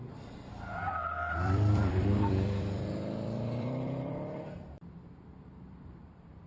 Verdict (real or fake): fake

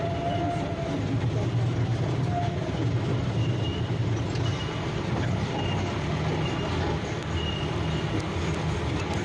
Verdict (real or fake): real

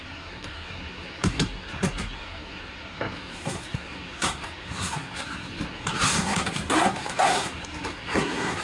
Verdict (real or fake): fake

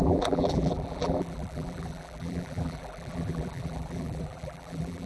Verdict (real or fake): fake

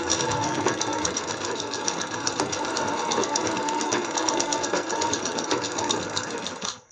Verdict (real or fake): fake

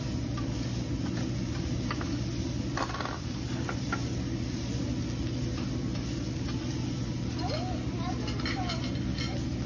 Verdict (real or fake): real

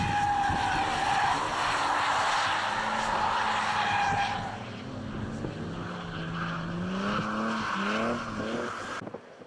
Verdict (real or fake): real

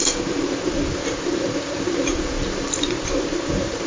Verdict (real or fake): fake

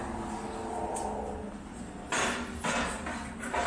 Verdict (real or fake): real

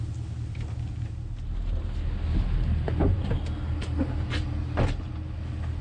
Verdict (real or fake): real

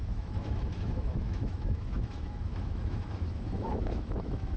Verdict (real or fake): fake